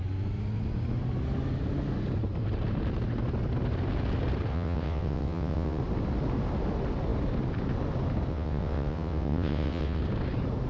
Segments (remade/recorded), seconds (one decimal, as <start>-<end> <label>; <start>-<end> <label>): 0.0-4.5 recorded; 4.5-5.8 remade; 5.8-8.3 recorded; 8.3-10.0 remade; 10.0-10.7 recorded